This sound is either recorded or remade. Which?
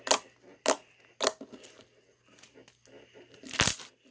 recorded